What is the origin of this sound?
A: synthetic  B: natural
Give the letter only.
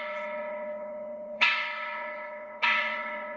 A